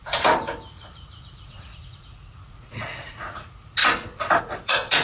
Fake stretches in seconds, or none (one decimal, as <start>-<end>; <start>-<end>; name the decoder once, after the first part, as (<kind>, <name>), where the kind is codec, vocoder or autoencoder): 0.7-3.8 (vocoder, Vocos); 4.4-5.0